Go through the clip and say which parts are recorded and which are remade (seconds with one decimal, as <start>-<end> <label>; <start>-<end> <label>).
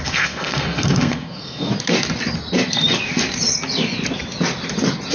0.0-1.7 remade; 1.7-5.1 recorded